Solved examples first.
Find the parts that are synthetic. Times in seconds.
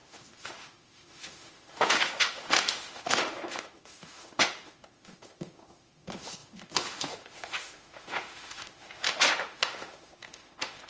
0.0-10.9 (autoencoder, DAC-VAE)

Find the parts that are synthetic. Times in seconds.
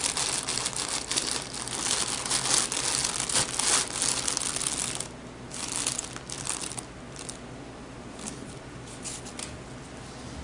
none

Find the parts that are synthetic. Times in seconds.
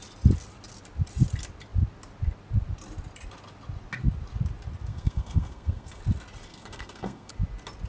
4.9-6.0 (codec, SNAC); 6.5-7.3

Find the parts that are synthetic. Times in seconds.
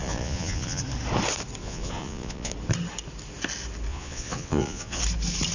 0.0-0.8 (vocoder, Vocos); 1.6-2.5; 3.9-5.0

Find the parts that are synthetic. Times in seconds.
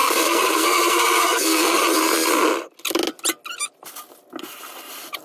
0.0-1.8 (codec, SNAC)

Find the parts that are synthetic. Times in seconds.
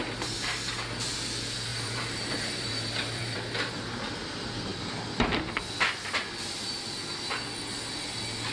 1.7-3.7 (vocoder, BigVGAN v2)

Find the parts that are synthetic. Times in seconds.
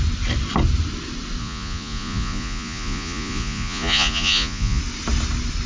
1.4-4.8 (vocoder, Vocos)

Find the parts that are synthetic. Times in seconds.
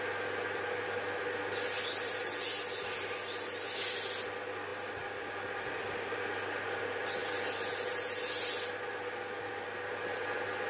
none